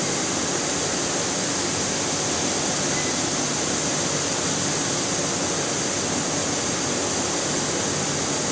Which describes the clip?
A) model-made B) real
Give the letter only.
B